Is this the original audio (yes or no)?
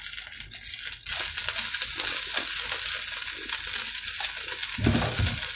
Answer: yes